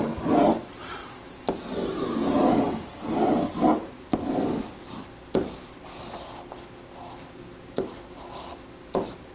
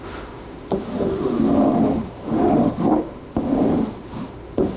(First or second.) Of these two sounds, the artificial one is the second